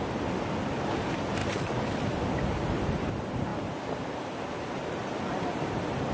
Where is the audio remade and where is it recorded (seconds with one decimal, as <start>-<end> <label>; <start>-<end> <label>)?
0.0-1.4 recorded; 1.4-3.1 remade; 3.1-3.5 recorded; 3.5-5.2 remade; 5.2-6.1 recorded